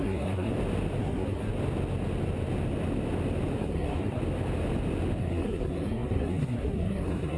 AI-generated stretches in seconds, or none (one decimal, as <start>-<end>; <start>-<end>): 0.0-0.5; 1.0-1.5; 3.6-4.2; 5.2-7.4